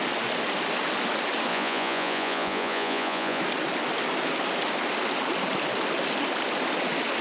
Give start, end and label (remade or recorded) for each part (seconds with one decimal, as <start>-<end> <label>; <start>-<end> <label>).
0.0-1.5 recorded; 1.5-3.4 remade; 3.4-7.2 recorded